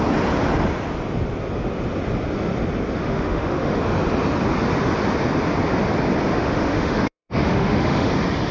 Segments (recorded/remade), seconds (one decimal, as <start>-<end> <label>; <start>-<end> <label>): 0.0-3.0 recorded; 3.0-3.8 remade; 3.8-6.3 recorded; 6.3-8.1 remade; 8.1-8.5 recorded